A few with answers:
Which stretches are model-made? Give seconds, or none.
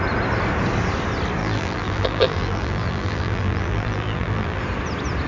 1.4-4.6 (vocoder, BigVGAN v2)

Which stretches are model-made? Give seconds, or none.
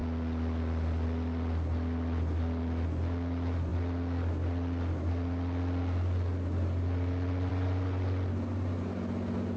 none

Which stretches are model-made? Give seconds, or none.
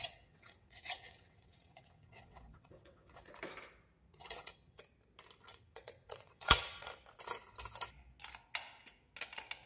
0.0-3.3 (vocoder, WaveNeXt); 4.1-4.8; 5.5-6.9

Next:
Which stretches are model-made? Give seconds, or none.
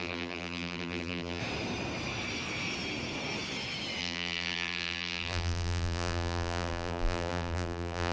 0.0-1.4 (vocoder, BigVGAN v2); 4.0-8.1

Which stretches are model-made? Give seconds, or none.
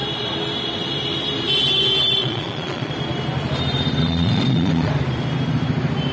2.2-2.9 (vocoder, Vocos); 4.0-4.9